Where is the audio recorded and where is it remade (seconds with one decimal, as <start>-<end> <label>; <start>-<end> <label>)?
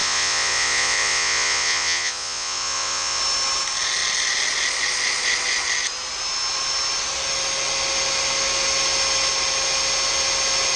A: 0.0-3.2 remade; 3.2-10.8 recorded